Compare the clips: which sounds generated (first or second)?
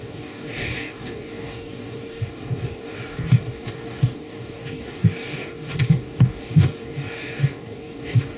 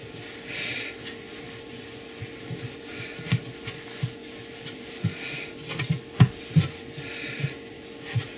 first